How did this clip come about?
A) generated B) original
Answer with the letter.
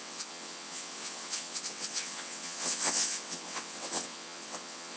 A